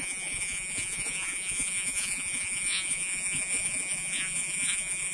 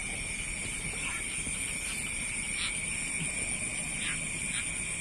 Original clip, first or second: second